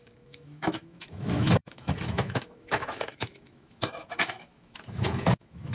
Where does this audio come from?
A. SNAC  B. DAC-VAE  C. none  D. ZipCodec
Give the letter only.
B